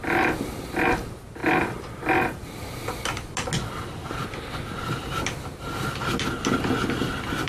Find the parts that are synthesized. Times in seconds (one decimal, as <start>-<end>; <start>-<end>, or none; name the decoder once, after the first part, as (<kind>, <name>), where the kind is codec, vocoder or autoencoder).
none